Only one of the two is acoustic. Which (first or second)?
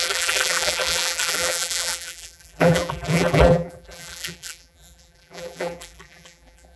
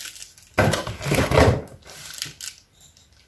second